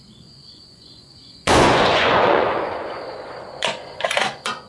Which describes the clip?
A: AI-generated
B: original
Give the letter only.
A